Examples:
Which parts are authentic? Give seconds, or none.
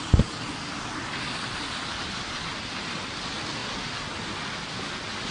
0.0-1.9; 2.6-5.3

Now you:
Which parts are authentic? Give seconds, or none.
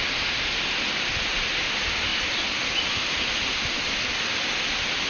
0.0-2.1; 4.1-5.1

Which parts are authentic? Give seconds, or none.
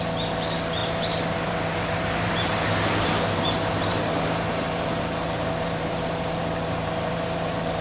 0.0-0.8; 2.7-3.9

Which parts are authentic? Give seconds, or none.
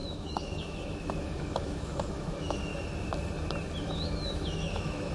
2.7-3.8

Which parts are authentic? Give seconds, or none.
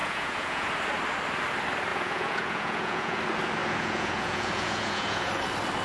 0.7-1.9; 3.2-3.6; 5.3-5.8